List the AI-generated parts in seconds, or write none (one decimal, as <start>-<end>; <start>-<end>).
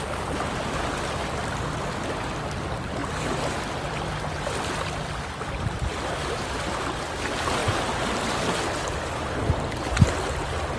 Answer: none